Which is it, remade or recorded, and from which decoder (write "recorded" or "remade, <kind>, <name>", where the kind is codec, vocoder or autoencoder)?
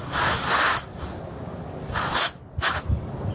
recorded